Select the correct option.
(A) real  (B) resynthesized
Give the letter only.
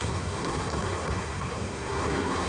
B